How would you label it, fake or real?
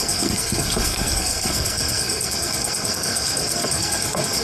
fake